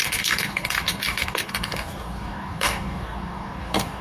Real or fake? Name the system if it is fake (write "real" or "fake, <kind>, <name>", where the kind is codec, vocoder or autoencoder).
fake, codec, DAC